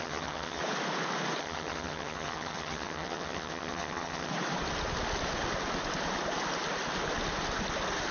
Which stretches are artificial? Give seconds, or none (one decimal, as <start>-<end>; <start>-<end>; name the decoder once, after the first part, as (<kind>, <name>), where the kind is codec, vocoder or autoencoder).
0.0-0.6 (vocoder, HiFi-GAN); 1.4-4.3